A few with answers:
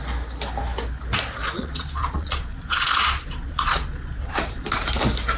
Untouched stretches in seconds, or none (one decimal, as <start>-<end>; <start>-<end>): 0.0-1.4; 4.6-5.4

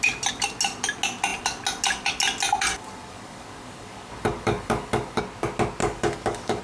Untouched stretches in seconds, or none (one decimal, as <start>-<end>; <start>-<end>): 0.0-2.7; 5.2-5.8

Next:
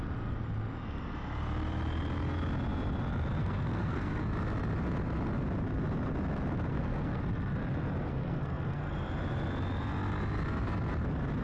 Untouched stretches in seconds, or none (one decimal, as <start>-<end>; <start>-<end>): 0.0-3.4; 4.2-6.7; 7.2-8.1; 8.9-11.4

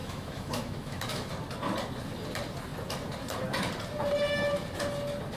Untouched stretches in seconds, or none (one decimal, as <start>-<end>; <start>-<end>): 1.3-5.4

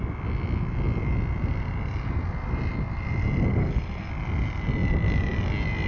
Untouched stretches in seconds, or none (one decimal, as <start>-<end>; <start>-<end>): 0.0-3.6; 4.1-5.9